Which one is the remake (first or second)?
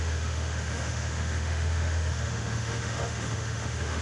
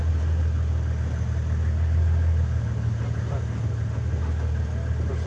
first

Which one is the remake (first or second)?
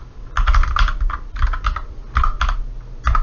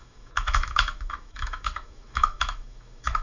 second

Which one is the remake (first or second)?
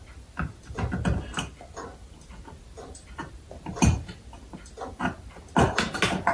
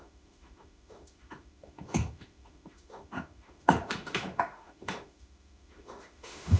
second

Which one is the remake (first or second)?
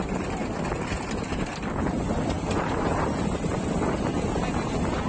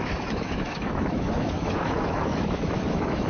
second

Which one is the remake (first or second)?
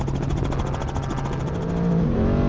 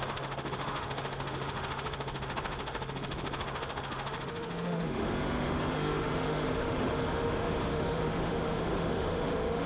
second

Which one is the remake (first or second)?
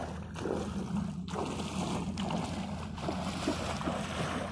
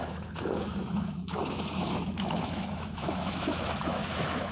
second